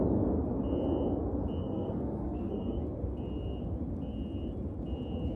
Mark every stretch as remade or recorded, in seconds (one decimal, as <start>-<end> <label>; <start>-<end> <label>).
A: 0.0-1.6 recorded; 1.6-2.8 remade; 2.8-5.4 recorded